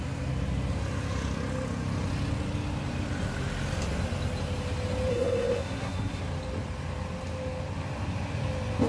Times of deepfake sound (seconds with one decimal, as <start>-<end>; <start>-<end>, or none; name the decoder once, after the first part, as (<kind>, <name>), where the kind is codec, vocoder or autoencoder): 5.1-6.2 (codec, SNAC)